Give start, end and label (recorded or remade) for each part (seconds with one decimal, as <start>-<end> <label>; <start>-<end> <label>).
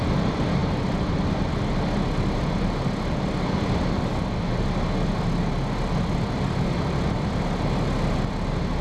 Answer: 0.0-8.8 recorded